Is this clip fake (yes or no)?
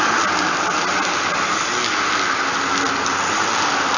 no